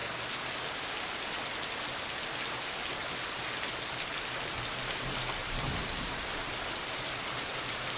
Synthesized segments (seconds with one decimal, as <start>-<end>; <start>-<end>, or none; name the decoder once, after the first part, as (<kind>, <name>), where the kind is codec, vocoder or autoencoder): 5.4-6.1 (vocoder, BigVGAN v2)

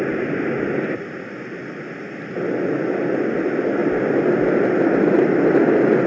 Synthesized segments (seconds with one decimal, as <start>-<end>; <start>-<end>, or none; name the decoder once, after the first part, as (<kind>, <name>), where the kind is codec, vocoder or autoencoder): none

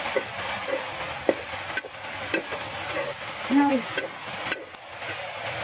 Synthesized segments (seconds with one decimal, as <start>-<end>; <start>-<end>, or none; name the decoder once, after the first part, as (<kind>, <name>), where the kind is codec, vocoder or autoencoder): none